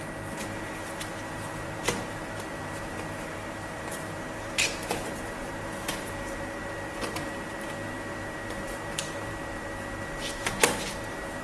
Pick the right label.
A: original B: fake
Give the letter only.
B